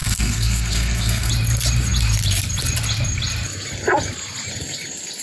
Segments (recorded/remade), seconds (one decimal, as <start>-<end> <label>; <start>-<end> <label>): 0.0-1.3 remade; 1.3-5.2 recorded